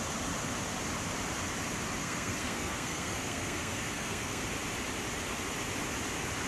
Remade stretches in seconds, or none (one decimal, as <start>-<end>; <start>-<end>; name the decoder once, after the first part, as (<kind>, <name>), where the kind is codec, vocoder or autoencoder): 2.0-4.4 (codec, SNAC)